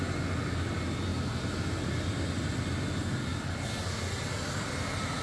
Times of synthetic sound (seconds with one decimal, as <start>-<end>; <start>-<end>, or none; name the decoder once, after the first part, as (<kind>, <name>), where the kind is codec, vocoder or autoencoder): none